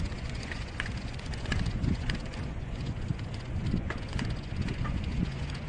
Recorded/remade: remade